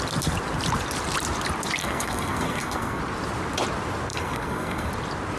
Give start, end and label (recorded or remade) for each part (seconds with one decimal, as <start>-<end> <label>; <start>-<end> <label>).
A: 0.0-1.8 recorded; 1.8-3.0 remade; 3.0-4.1 recorded; 4.1-4.9 remade; 4.9-5.4 recorded